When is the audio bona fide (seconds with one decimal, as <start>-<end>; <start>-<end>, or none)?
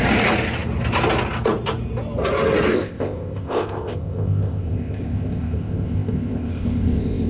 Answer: 0.0-2.7